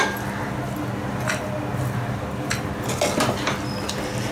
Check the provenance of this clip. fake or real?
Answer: real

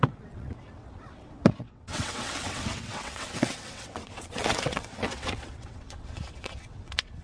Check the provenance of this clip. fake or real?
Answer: fake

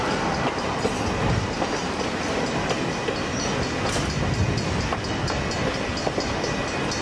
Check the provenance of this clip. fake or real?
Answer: real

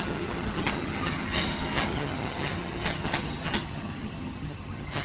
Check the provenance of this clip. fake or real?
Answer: fake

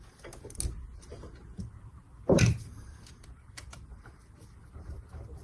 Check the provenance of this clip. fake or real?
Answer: real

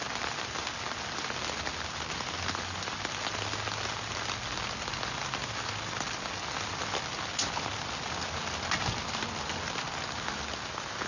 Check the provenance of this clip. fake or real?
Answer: real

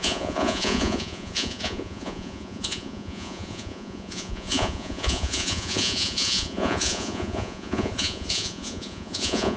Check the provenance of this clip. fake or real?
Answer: fake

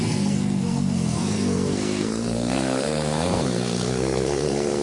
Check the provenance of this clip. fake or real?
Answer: fake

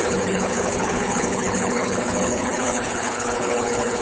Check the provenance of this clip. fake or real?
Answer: fake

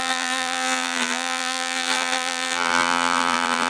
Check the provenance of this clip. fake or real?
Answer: fake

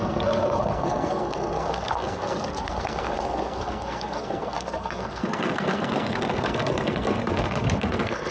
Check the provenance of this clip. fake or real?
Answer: fake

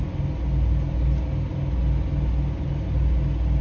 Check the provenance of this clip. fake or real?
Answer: real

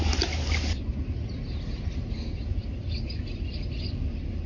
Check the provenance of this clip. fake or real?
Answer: real